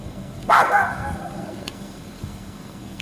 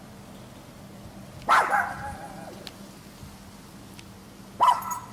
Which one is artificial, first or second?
first